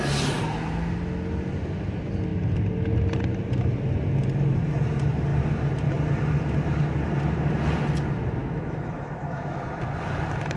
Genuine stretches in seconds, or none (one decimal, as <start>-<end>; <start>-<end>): 0.0-8.4; 9.6-10.6